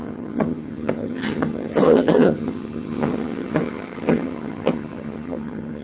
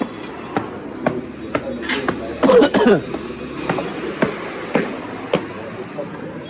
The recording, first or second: second